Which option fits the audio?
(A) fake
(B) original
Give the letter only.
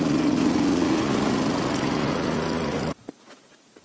A